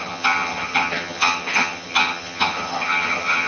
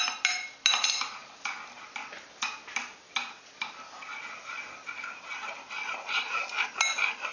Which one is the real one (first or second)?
second